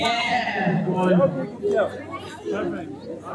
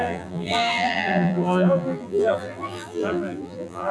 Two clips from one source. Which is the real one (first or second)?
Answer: first